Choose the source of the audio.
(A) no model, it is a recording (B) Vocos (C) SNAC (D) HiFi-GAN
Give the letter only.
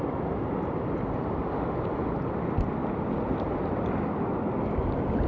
A